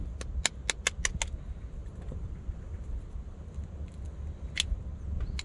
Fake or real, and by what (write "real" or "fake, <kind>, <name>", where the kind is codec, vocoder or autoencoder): real